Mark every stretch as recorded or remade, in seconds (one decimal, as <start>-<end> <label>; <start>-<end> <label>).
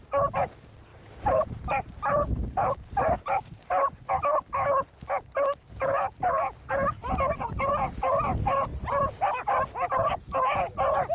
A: 0.0-0.9 recorded; 0.9-4.1 remade; 4.1-7.0 recorded; 7.0-7.7 remade; 7.7-11.1 recorded